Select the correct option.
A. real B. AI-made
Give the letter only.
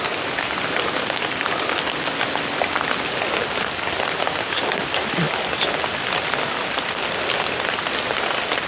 A